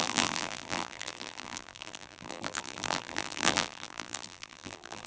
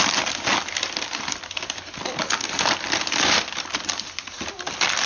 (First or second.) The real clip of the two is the second